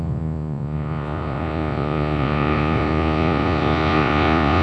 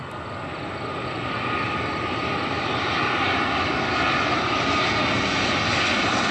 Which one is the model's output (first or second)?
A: first